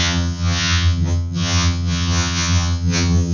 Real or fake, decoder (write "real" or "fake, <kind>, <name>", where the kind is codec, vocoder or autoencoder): fake, vocoder, HiFi-GAN